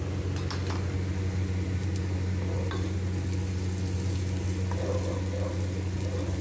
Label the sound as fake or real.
real